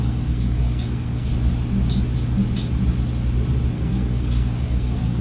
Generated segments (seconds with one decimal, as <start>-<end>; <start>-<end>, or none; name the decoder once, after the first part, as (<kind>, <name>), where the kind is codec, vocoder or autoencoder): 0.0-1.3 (codec, SNAC); 3.7-5.2